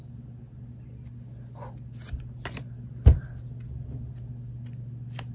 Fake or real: real